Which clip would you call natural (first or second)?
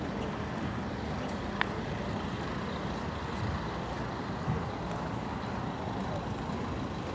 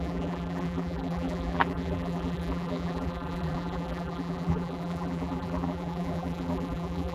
first